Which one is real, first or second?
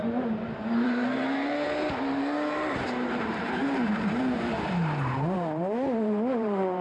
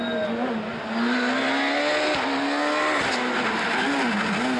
second